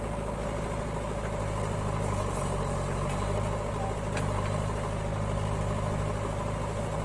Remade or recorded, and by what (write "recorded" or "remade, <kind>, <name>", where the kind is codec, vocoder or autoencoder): recorded